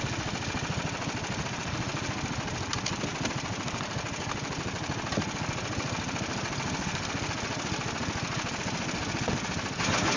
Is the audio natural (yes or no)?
yes